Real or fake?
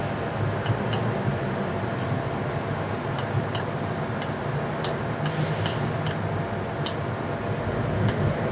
real